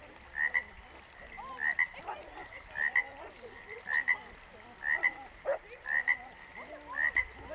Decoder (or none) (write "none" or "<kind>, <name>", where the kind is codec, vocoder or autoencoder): none